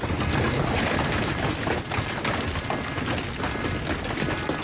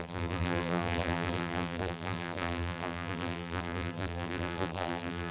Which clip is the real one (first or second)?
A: first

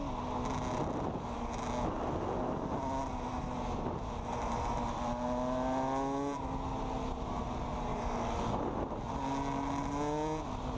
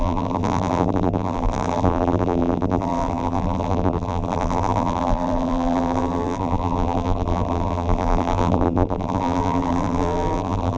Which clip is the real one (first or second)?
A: first